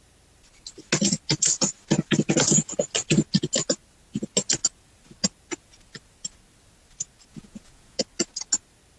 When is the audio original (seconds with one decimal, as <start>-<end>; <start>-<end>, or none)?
0.0-7.3; 8.0-9.0